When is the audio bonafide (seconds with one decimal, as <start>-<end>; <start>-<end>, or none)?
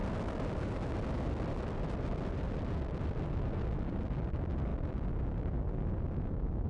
0.0-6.7